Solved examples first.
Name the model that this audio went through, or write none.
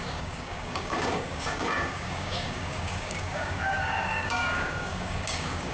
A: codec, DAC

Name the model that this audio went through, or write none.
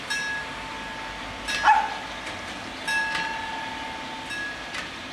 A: none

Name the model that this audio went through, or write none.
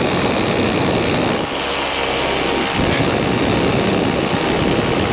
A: none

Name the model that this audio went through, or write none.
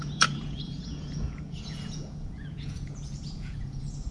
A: vocoder, Vocos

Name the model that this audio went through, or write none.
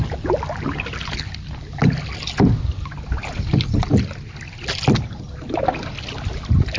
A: none